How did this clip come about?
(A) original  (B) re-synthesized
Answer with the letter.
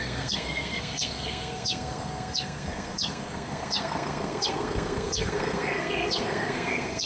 B